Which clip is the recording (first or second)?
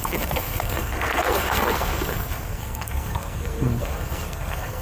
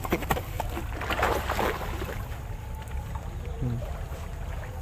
second